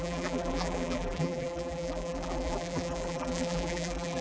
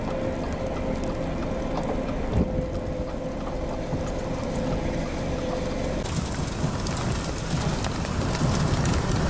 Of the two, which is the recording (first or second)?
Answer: second